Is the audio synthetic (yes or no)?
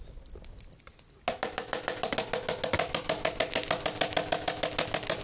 no